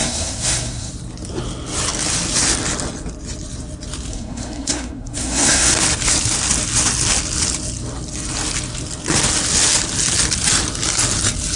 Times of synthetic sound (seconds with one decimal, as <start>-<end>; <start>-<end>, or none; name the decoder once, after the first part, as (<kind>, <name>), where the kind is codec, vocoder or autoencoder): 0.0-0.9 (codec, SNAC); 4.1-5.8